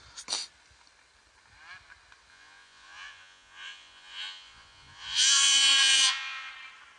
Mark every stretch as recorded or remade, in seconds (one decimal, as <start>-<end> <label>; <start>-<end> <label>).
0.0-2.3 recorded; 2.3-6.5 remade; 6.5-7.0 recorded